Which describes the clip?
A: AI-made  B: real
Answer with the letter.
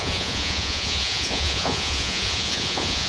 A